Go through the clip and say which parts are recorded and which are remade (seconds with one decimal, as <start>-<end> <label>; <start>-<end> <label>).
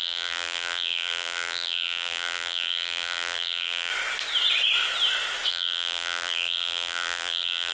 0.0-3.9 remade; 3.9-5.5 recorded; 5.5-7.7 remade